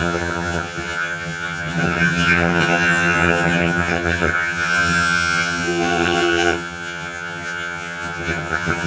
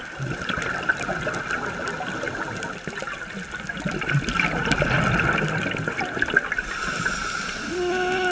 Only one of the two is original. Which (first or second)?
second